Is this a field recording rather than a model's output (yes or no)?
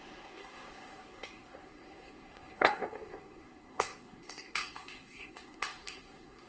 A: no